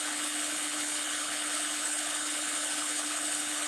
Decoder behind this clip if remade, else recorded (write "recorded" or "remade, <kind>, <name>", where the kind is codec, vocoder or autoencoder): remade, codec, HILCodec